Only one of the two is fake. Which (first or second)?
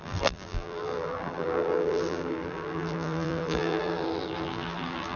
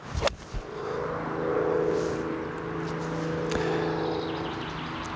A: first